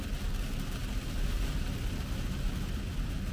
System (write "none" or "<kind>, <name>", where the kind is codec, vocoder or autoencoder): none